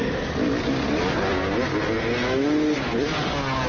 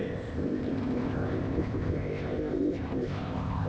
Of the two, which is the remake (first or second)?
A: second